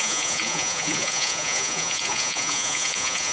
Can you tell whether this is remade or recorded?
remade